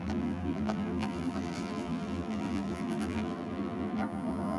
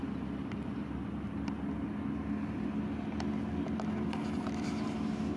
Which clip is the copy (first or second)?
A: first